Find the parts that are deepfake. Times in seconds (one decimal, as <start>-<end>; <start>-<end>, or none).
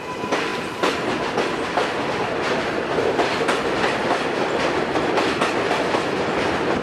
none